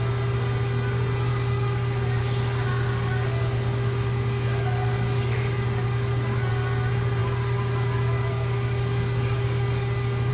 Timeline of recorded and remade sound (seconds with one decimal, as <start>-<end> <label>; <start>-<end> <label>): 0.0-1.3 recorded; 1.3-2.2 remade; 2.2-2.7 recorded; 2.7-6.5 remade; 6.5-7.2 recorded; 7.2-10.3 remade